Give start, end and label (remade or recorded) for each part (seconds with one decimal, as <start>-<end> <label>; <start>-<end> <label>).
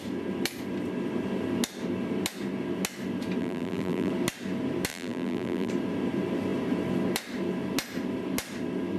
0.0-3.4 recorded; 3.4-4.1 remade; 4.1-4.9 recorded; 4.9-5.7 remade; 5.7-9.0 recorded